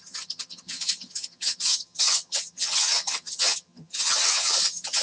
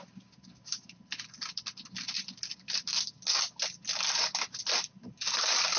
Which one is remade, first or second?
first